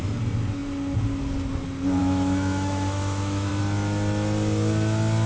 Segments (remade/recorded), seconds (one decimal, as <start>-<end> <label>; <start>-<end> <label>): 0.0-2.0 recorded; 2.0-3.5 remade; 3.5-5.3 recorded